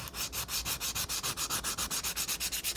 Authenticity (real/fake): real